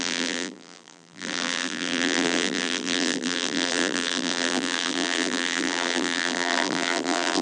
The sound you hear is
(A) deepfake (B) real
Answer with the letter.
A